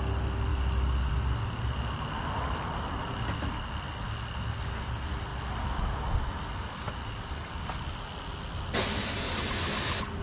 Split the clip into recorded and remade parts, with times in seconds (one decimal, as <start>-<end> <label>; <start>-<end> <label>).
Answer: 0.0-10.2 recorded